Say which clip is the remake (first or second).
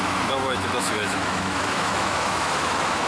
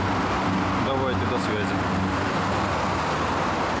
first